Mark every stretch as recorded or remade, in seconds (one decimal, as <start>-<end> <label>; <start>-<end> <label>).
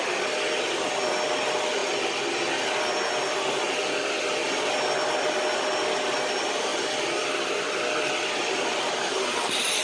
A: 0.0-8.7 recorded; 8.7-9.8 remade